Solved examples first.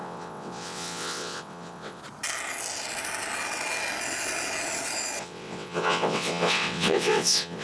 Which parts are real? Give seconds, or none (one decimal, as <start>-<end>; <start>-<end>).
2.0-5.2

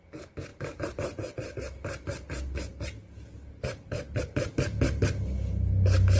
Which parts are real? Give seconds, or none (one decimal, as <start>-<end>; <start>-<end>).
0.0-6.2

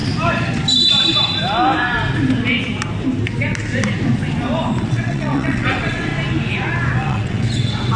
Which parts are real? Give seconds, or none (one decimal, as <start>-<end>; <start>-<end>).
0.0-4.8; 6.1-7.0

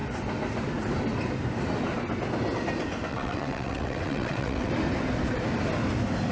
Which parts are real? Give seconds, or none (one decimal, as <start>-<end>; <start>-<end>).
0.0-3.1; 4.7-6.3

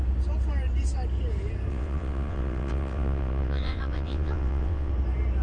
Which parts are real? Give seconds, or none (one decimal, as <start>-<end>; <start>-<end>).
0.0-1.7; 4.9-5.4